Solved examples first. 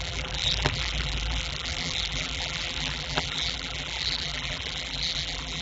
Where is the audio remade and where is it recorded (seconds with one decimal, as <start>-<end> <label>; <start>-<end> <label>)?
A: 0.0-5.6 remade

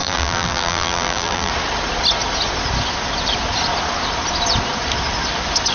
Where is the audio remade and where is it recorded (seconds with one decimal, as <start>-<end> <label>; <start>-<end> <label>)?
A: 0.0-1.5 remade; 1.5-5.7 recorded

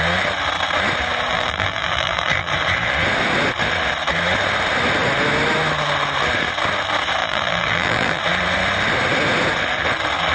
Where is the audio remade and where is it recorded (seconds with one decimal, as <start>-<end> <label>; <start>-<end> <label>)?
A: 0.0-1.3 recorded; 1.3-2.5 remade; 2.5-7.2 recorded; 7.2-8.2 remade; 8.2-10.3 recorded

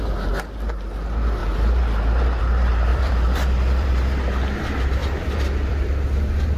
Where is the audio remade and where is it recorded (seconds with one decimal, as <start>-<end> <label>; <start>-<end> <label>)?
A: 0.0-2.9 recorded; 2.9-3.9 remade; 3.9-5.0 recorded; 5.0-5.9 remade; 5.9-6.6 recorded